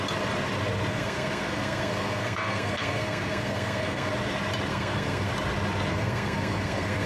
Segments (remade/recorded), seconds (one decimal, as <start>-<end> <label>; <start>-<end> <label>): 0.0-0.9 recorded; 0.9-4.1 remade; 4.1-4.7 recorded; 4.7-5.3 remade; 5.3-5.9 recorded; 5.9-7.1 remade